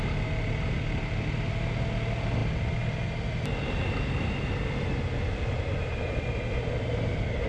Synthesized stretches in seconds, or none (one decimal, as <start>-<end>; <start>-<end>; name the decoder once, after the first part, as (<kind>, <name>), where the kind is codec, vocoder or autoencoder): none